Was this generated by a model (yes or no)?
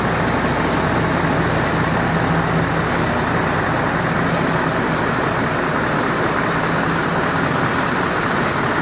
no